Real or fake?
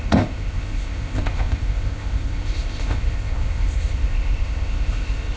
fake